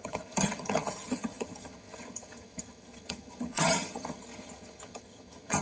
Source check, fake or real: fake